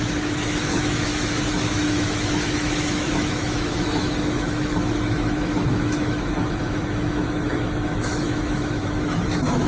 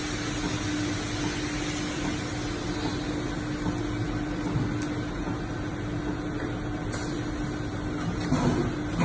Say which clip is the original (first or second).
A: second